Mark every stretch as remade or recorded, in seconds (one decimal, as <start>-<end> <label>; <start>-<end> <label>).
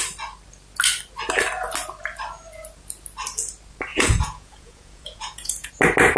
0.0-3.9 recorded; 3.9-5.7 remade; 5.7-6.2 recorded